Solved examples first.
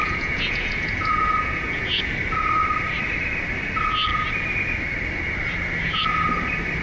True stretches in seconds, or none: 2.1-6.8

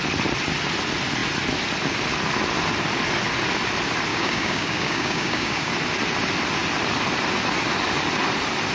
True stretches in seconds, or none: 0.0-4.1; 5.7-8.7

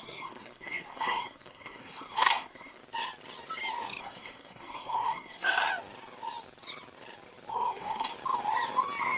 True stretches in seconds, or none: 2.8-4.0; 5.7-7.5; 8.1-9.2

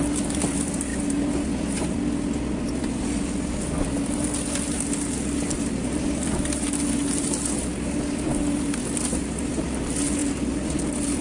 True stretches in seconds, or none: 0.0-11.2

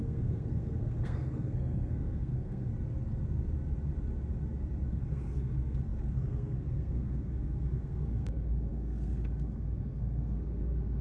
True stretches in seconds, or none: 2.7-4.9

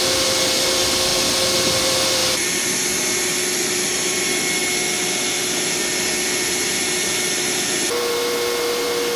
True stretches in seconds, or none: 0.0-2.2; 2.7-9.2

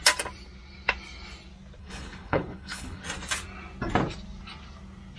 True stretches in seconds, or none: 0.0-1.8; 3.0-5.2